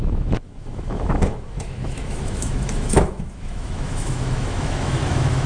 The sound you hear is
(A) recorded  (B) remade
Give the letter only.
B